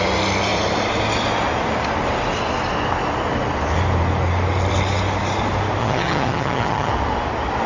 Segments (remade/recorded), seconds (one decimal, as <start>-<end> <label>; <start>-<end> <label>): 0.0-5.8 recorded; 5.8-6.9 remade; 6.9-7.7 recorded